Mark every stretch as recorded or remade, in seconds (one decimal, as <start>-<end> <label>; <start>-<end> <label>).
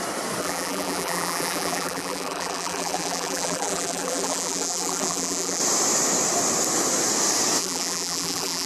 0.0-0.4 recorded; 0.4-5.6 remade; 5.6-7.6 recorded; 7.6-8.7 remade